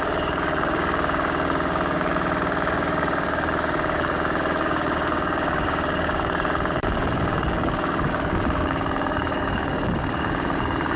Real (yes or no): no